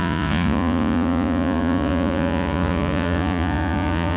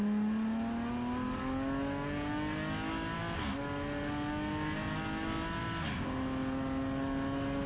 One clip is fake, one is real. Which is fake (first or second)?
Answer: first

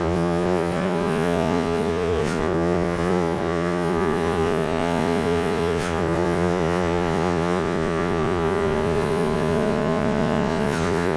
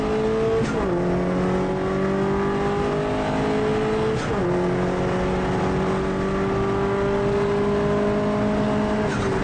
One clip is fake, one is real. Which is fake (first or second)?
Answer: first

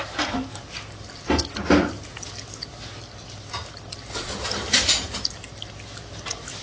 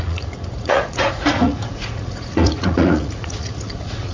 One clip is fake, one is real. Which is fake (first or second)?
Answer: second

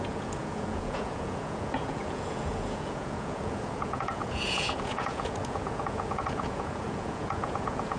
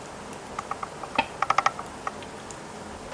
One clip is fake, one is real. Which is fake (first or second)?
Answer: first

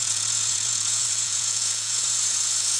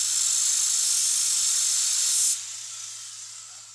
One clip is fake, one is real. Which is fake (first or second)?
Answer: first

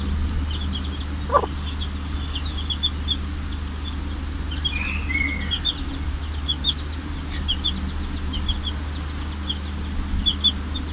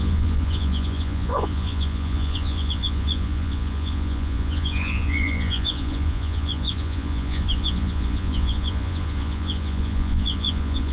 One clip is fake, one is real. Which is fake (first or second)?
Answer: second